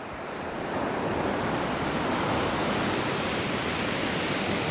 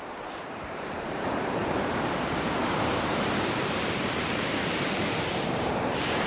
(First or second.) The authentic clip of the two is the first